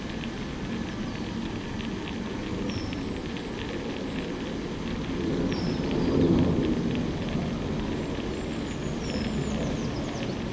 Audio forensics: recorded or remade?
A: recorded